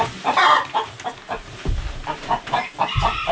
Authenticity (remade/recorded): remade